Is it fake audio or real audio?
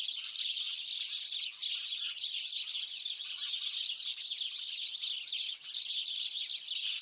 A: real